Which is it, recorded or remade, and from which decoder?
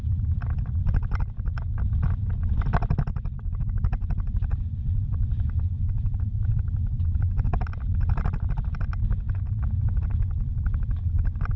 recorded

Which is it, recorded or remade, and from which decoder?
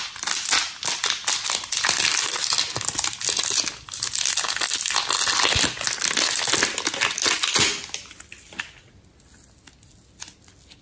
recorded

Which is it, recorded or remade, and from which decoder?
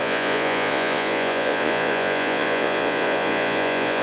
remade, vocoder, Vocos